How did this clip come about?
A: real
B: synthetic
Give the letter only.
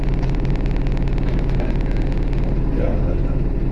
A